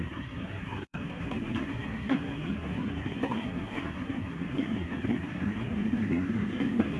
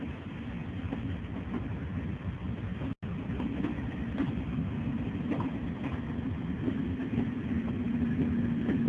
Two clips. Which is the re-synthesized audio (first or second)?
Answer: first